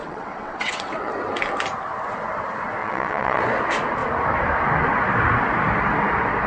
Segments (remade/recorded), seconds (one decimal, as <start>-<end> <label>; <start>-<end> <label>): 0.0-1.1 remade; 1.1-2.8 recorded; 2.8-3.4 remade; 3.4-6.5 recorded

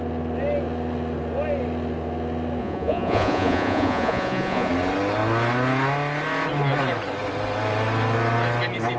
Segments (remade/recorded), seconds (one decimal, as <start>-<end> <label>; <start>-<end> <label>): 0.0-2.6 recorded; 2.6-4.7 remade; 4.7-9.0 recorded